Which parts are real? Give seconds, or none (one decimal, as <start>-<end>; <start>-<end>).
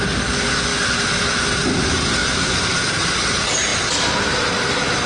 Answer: 0.0-2.2; 2.8-5.1